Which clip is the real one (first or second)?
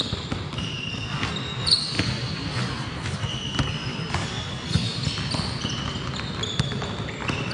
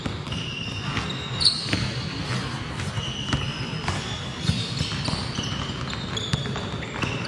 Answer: second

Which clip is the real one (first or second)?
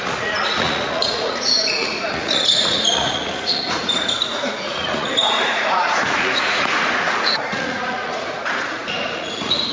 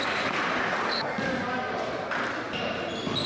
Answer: second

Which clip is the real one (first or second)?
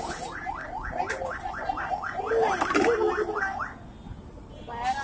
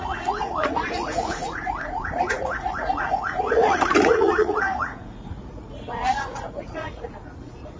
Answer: first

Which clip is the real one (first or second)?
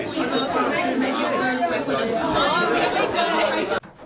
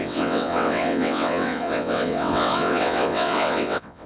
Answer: first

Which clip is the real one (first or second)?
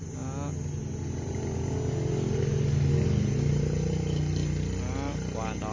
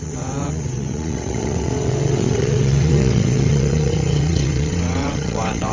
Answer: first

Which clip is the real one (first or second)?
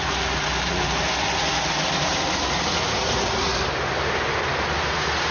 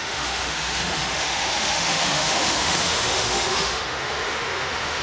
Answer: first